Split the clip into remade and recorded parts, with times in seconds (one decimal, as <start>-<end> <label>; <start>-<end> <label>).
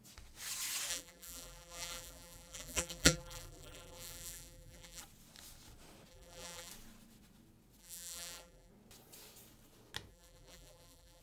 0.0-0.9 recorded; 0.9-5.0 remade; 5.0-6.1 recorded; 6.1-6.7 remade; 6.7-7.8 recorded; 7.8-8.7 remade; 8.7-10.1 recorded; 10.1-11.2 remade